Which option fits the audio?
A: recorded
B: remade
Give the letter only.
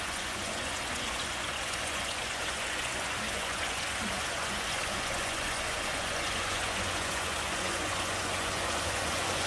B